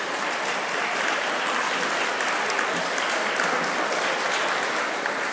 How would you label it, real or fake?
real